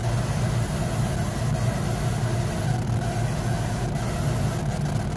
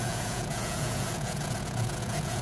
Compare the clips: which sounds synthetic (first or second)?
second